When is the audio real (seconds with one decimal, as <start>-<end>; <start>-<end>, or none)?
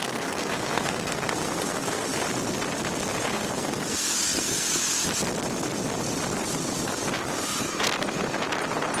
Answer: 2.1-3.2; 4.8-9.0